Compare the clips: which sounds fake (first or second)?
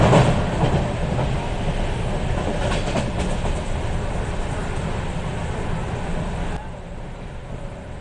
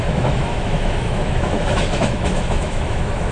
second